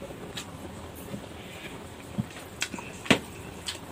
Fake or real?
real